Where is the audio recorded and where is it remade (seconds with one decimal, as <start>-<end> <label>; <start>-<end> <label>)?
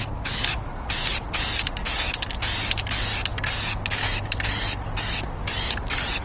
0.0-6.2 recorded